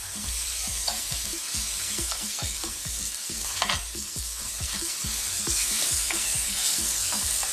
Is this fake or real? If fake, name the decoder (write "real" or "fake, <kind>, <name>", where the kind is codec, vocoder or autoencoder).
fake, codec, SNAC